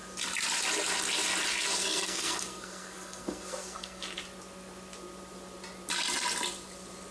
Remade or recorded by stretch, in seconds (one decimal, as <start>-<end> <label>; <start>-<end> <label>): 0.0-1.7 recorded; 1.7-4.2 remade; 4.2-7.1 recorded